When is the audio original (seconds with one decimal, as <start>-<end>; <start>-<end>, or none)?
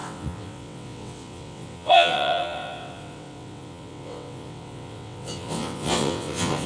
none